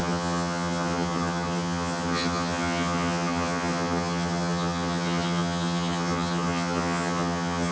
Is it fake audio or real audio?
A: fake